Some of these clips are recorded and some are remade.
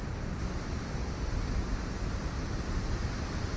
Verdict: recorded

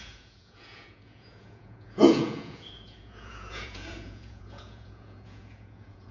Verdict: remade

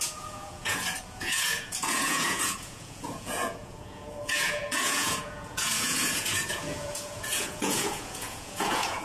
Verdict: remade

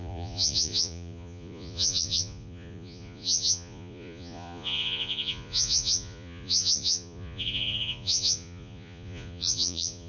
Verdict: remade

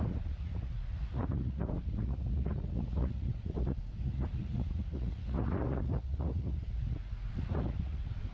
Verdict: remade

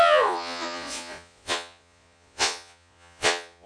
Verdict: remade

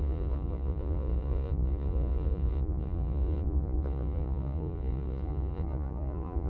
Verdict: remade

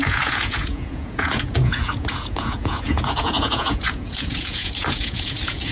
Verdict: remade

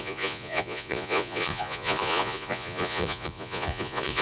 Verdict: remade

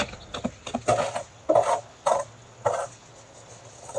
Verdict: recorded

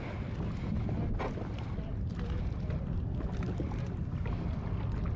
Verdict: recorded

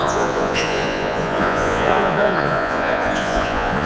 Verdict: remade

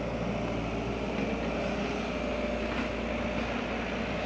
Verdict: recorded